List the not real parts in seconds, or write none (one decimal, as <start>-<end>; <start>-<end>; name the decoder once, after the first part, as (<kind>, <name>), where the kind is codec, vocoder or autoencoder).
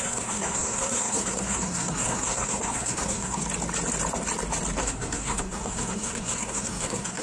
0.0-3.4 (codec, SNAC); 4.8-7.2